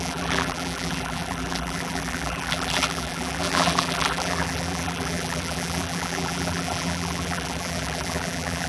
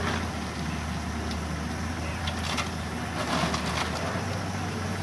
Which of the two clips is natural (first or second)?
second